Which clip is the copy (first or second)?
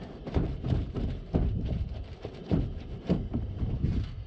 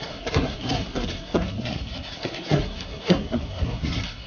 second